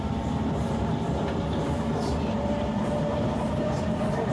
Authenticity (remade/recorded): remade